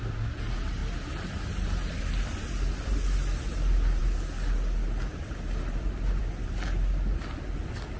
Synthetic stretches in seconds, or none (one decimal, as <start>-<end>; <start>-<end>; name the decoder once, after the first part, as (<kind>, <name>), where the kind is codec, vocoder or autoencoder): none